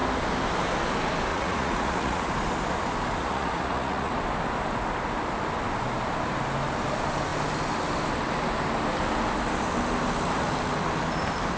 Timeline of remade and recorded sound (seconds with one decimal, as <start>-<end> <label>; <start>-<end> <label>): 0.0-1.3 recorded; 1.3-2.3 remade; 2.3-3.2 recorded; 3.2-4.1 remade; 4.1-11.6 recorded